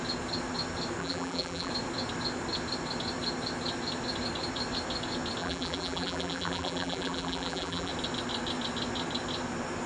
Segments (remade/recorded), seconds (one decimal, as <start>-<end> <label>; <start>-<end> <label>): 0.0-1.0 recorded; 1.0-1.7 remade; 1.7-5.4 recorded; 5.4-7.9 remade; 7.9-9.9 recorded